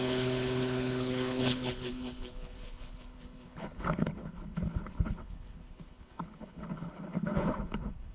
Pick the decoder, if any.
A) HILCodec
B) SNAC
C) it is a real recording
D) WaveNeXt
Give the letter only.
A